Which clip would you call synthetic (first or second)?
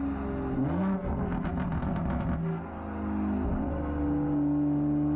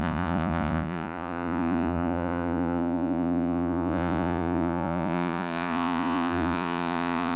second